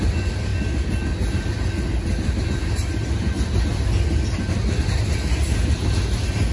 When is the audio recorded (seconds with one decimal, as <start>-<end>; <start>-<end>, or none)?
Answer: 0.0-6.5